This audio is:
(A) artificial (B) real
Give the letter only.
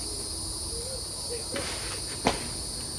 B